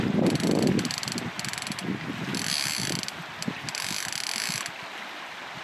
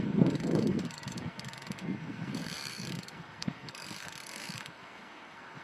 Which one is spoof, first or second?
second